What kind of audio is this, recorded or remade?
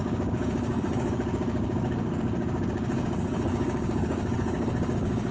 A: remade